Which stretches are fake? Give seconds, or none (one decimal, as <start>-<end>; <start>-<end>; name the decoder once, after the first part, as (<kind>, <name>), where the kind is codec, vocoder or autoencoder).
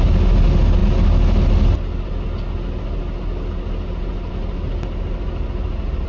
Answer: none